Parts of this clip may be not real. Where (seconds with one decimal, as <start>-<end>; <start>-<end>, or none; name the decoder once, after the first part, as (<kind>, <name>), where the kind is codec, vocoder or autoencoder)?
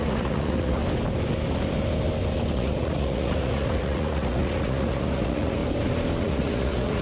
0.0-0.8 (vocoder, Vocos); 2.5-5.6; 6.2-7.0